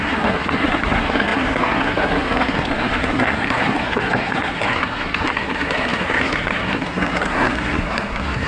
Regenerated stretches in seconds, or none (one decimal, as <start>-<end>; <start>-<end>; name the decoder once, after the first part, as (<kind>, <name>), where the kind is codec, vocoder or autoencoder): 0.0-8.5 (codec, SNAC)